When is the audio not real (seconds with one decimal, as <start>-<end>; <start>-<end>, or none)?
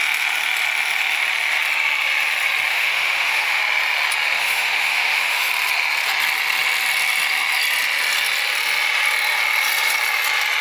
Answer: 2.7-3.6; 4.4-5.5